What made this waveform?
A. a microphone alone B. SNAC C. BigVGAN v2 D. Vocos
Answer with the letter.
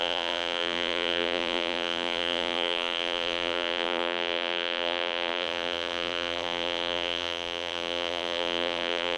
C